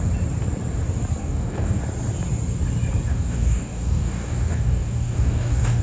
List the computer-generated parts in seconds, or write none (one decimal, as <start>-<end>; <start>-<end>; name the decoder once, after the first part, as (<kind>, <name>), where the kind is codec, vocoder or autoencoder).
1.2-1.8 (codec, DAC); 3.1-5.8